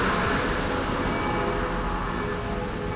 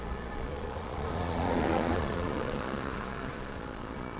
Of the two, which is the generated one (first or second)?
second